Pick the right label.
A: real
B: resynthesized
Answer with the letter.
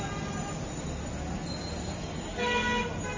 A